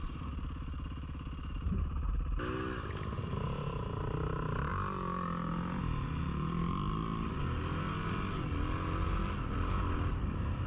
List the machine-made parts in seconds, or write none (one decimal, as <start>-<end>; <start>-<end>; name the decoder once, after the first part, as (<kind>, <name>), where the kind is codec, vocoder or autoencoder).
none